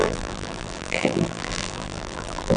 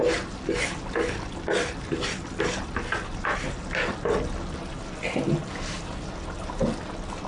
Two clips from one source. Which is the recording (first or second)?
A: second